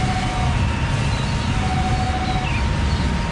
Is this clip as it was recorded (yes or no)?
yes